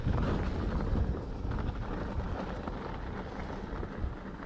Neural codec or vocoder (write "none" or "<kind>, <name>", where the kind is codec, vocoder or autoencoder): none